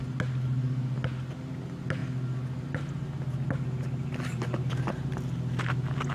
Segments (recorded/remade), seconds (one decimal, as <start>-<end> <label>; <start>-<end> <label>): 0.0-6.1 recorded